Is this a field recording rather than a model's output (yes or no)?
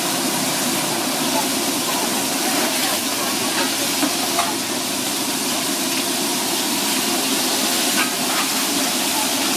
yes